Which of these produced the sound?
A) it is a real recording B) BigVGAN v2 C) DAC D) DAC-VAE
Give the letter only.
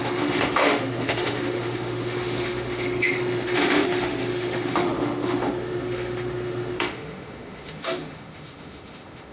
D